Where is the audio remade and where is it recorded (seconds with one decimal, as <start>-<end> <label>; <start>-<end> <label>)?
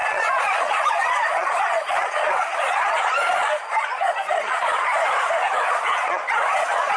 0.0-4.9 remade; 4.9-5.7 recorded; 5.7-7.0 remade